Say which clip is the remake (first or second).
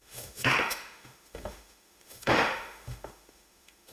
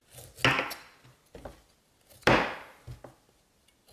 first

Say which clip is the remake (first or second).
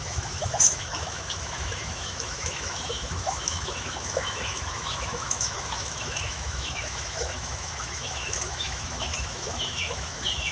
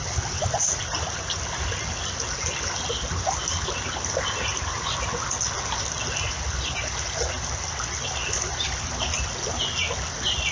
first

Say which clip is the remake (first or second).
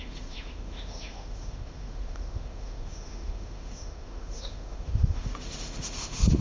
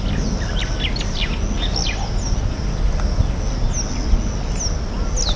first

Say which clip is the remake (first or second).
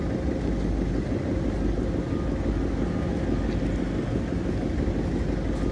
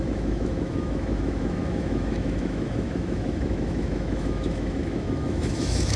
second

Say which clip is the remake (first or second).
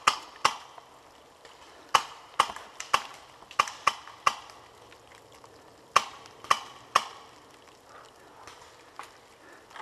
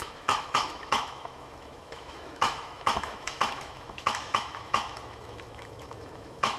second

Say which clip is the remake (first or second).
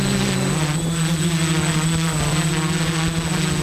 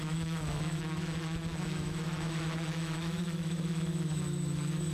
second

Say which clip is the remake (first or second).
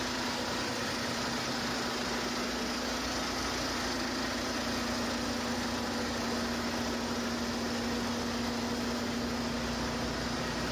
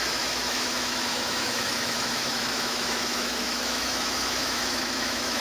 second